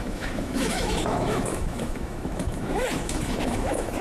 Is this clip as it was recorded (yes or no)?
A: no